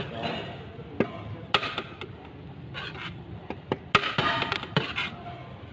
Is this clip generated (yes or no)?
no